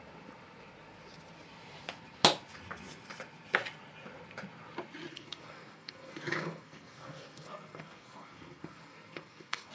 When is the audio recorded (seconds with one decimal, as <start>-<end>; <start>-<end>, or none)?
0.0-5.1